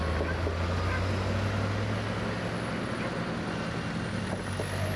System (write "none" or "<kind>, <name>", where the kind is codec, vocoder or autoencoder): none